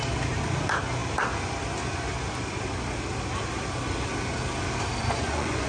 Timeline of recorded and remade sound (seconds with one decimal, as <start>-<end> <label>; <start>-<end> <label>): 0.0-5.0 recorded; 5.0-5.7 remade